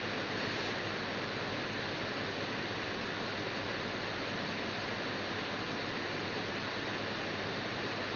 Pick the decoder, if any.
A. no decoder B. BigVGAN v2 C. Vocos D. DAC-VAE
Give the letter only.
A